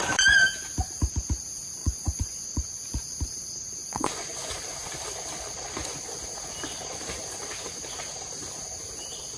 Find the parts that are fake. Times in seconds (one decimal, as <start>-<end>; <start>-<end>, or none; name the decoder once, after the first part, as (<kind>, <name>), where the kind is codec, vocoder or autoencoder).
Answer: 1.8-3.0 (vocoder, Vocos); 3.8-4.5